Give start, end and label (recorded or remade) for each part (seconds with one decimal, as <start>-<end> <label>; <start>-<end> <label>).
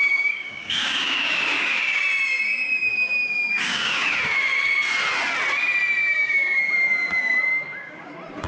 0.0-2.0 remade; 2.0-2.9 recorded; 2.9-4.2 remade; 4.2-6.0 recorded; 6.0-6.6 remade; 6.6-7.5 recorded; 7.5-8.1 remade; 8.1-8.5 recorded